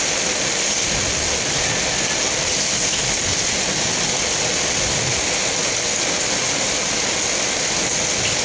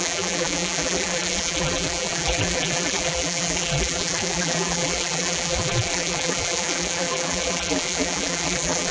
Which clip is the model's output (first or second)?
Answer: second